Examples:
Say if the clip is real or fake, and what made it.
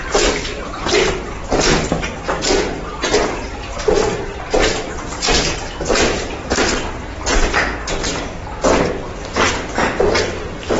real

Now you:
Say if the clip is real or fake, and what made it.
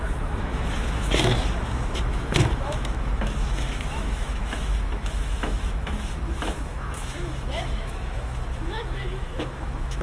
fake, autoencoder, DAC-VAE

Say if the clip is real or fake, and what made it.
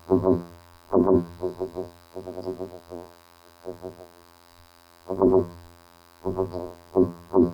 fake, vocoder, BigVGAN v2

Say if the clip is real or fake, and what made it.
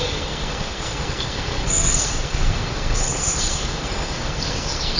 fake, codec, SNAC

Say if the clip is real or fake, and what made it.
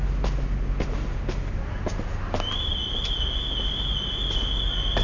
real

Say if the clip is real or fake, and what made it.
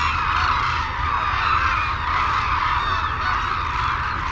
real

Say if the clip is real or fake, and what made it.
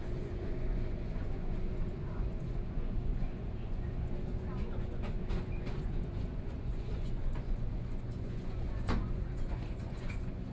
fake, vocoder, Vocos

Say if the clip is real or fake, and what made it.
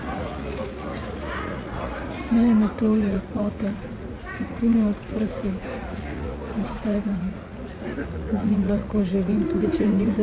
fake, vocoder, Vocos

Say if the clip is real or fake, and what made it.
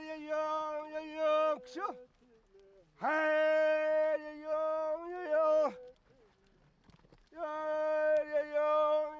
real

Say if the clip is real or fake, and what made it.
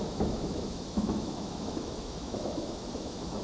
fake, autoencoder, DAC-VAE